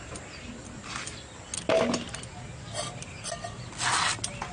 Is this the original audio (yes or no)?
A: yes